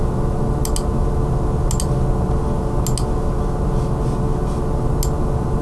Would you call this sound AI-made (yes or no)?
no